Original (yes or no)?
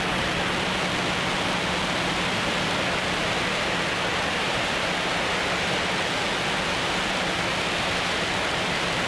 yes